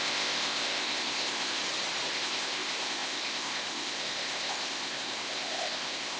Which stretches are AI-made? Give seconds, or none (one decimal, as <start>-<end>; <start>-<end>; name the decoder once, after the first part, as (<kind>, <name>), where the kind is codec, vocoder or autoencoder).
0.0-1.6 (codec, ZipCodec); 2.1-6.2